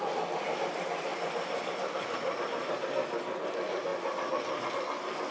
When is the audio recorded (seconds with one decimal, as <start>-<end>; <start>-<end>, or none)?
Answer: 0.0-5.3